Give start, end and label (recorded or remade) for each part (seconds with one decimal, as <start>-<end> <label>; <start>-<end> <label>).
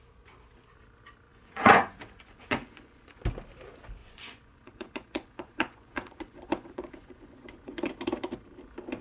0.0-1.3 recorded; 1.3-3.2 remade; 3.2-4.0 recorded; 4.0-7.9 remade; 7.9-9.0 recorded